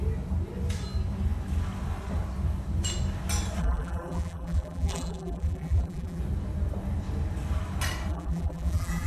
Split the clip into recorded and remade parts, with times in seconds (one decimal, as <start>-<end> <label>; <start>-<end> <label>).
0.0-3.6 recorded; 3.6-6.2 remade; 6.2-8.1 recorded; 8.1-9.1 remade